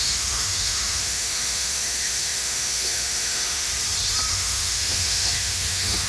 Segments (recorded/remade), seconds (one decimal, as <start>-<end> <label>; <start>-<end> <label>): 0.0-3.7 remade; 3.7-4.3 recorded; 4.3-6.1 remade

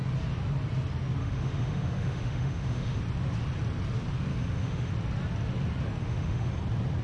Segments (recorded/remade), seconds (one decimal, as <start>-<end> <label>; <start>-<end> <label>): 0.0-1.2 recorded; 1.2-3.0 remade; 3.0-4.3 recorded; 4.3-4.9 remade; 4.9-6.0 recorded; 6.0-6.5 remade; 6.5-7.0 recorded

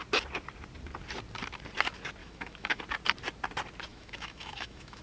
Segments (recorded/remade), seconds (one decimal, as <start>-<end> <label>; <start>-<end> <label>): 0.0-2.2 recorded; 2.2-2.8 remade; 2.8-3.9 recorded; 3.9-5.0 remade